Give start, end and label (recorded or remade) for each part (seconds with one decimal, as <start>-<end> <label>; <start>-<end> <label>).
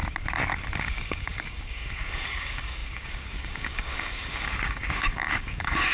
0.0-0.8 recorded; 0.8-5.9 remade